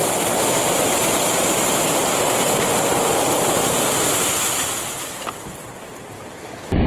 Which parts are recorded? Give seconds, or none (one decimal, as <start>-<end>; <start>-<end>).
0.0-6.9